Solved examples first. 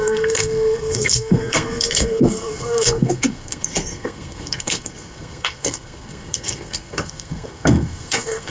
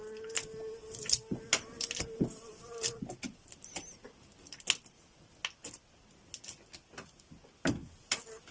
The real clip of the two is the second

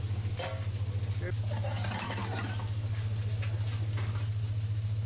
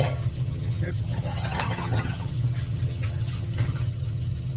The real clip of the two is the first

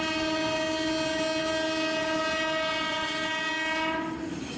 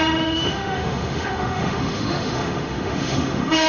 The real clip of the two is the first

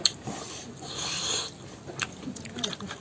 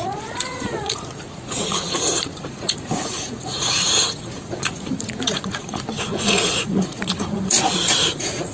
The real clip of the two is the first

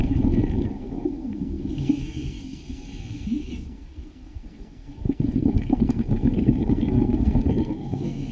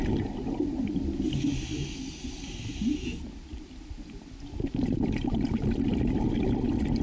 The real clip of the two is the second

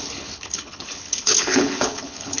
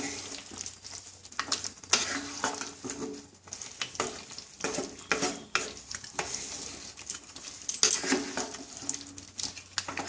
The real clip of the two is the second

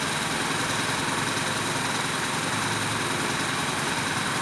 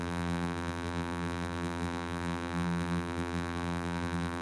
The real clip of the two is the first